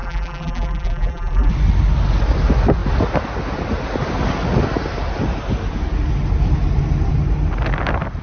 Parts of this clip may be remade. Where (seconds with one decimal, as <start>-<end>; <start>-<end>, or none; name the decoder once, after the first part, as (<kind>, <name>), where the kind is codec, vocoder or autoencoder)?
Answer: 0.0-1.5 (vocoder, BigVGAN v2)